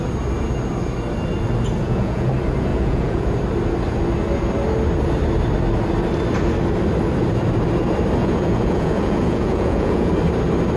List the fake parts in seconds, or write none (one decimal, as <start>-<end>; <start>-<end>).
1.8-2.3; 2.7-3.3; 8.2-10.1